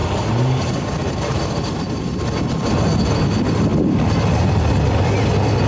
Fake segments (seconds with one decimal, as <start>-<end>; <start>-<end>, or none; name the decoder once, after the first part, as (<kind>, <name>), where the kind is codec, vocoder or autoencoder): 0.0-1.8 (vocoder, BigVGAN v2)